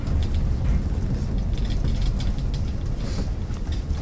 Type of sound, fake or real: real